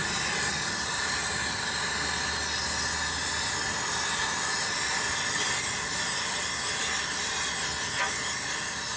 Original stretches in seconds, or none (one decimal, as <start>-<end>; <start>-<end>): 0.0-9.0